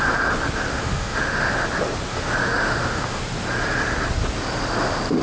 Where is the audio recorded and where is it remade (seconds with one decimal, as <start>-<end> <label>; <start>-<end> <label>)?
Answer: 0.0-0.7 recorded; 0.7-1.5 remade; 1.5-2.1 recorded; 2.1-3.2 remade; 3.2-5.2 recorded